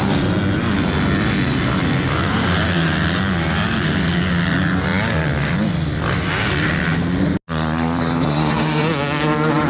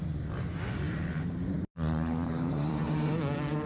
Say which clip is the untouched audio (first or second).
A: first